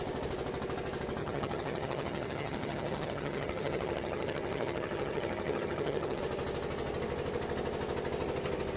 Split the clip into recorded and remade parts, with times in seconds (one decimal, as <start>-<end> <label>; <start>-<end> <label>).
0.0-1.2 recorded; 1.2-6.2 remade; 6.2-8.8 recorded